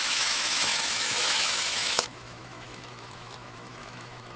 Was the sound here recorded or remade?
remade